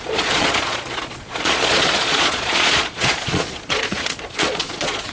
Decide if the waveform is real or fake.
fake